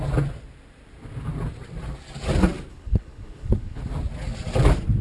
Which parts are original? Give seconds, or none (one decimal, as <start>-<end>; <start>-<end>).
0.0-2.7; 3.8-5.0